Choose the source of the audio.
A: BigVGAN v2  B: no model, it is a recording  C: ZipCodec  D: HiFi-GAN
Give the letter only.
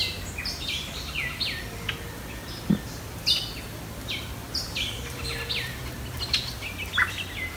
B